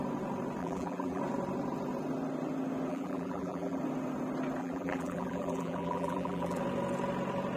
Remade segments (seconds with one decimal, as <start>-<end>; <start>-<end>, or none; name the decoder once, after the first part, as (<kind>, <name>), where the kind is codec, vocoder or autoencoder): 0.6-1.2 (vocoder, BigVGAN v2); 2.9-3.8; 4.6-6.6